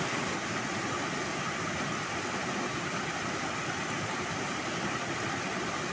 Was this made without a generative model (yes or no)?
yes